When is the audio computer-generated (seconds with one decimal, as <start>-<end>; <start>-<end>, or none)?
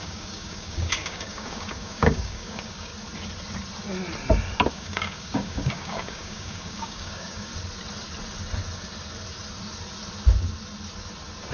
0.0-2.9; 4.7-7.5